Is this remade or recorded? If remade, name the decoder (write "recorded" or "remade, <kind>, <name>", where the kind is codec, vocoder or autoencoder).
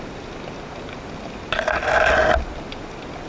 recorded